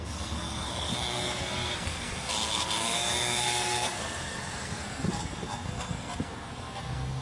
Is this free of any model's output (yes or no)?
no